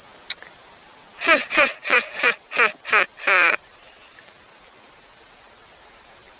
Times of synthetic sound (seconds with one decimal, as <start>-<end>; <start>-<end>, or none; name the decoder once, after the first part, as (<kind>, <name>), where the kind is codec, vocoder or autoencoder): 0.0-0.6 (vocoder, BigVGAN v2); 1.4-5.2

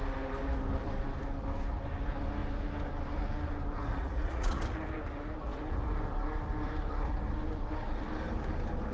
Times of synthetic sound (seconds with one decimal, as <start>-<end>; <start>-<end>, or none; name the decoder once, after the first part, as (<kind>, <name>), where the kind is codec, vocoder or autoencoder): 4.0-4.6 (vocoder, Vocos)

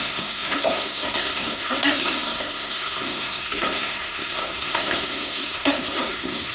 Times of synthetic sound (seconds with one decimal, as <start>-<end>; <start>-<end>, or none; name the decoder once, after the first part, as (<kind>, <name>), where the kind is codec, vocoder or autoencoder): 0.0-6.5 (codec, SNAC)

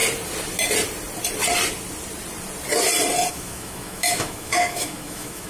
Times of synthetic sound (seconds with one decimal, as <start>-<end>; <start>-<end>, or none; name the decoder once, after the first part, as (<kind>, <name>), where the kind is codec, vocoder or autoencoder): 3.3-5.5 (autoencoder, DAC-VAE)

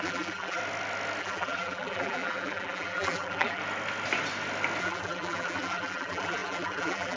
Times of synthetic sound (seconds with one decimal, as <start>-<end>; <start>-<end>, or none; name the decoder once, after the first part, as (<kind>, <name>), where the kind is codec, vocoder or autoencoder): 0.0-0.6 (vocoder, BigVGAN v2); 1.2-3.6; 4.8-7.2

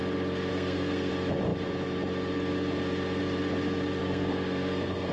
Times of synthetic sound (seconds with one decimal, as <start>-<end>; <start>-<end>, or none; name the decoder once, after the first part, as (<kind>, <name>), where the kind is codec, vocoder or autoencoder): 0.5-1.1 (codec, SNAC); 4.0-5.1